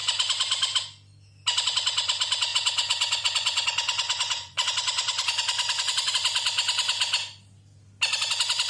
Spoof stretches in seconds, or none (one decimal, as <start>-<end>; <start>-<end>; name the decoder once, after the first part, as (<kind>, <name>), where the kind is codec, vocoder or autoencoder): 2.5-6.1 (vocoder, Vocos)